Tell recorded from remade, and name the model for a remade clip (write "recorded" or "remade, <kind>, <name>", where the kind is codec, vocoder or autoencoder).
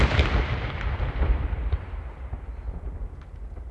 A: recorded